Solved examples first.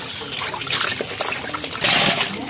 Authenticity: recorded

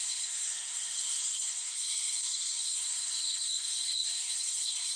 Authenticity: remade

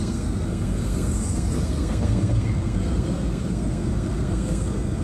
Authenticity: remade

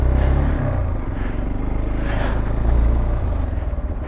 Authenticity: recorded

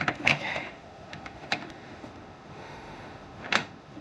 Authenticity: remade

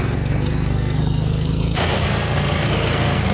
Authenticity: remade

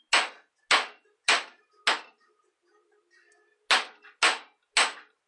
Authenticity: recorded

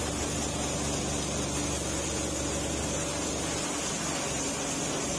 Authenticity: recorded